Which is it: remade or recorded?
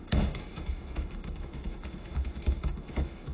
remade